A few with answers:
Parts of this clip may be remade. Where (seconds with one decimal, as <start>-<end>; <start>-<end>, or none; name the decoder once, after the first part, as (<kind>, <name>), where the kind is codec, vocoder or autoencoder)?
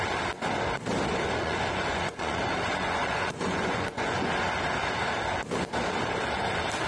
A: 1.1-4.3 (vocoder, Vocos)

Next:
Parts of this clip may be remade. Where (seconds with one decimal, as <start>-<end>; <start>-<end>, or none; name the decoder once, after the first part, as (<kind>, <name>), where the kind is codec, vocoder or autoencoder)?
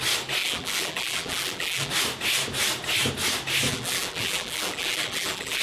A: 0.4-1.9 (vocoder, BigVGAN v2); 3.7-5.6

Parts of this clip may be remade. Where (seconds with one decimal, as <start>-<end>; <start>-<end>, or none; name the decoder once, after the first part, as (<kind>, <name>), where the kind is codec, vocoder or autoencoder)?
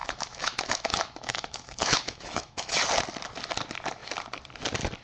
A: 0.0-2.7 (autoencoder, DAC-VAE)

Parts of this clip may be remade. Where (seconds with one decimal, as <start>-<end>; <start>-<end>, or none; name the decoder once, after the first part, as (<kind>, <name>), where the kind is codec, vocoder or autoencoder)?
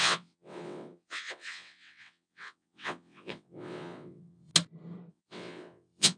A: 0.0-4.5 (vocoder, WaveNeXt); 5.1-6.2